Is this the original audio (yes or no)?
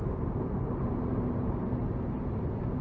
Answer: no